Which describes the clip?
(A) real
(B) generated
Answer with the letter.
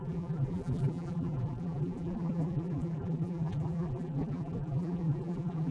B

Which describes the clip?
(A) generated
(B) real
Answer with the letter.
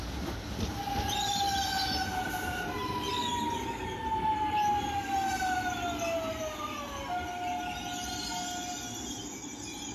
B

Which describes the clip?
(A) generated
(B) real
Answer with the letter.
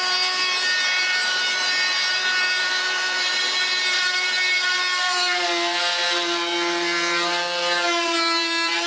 A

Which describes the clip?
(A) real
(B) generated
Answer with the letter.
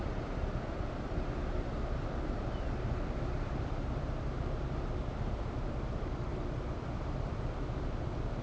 B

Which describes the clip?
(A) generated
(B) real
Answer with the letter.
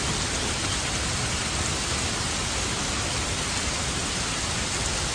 B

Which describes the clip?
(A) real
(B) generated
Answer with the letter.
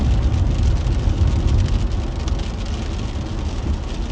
A